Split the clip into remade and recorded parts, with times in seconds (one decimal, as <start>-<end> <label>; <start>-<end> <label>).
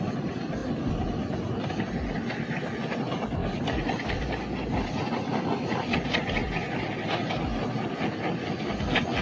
0.0-9.2 recorded